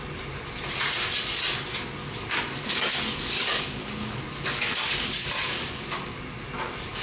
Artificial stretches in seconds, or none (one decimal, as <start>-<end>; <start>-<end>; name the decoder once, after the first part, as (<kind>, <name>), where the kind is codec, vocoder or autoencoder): 2.0-6.2 (codec, DAC)